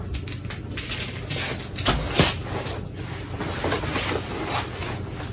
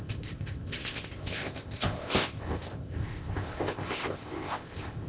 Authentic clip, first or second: first